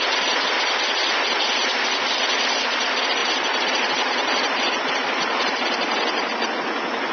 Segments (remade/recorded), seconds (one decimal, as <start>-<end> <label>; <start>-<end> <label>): 0.0-7.1 recorded